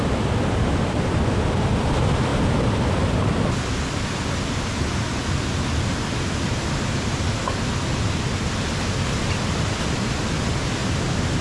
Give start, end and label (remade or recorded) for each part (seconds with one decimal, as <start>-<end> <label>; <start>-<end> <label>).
0.0-11.4 recorded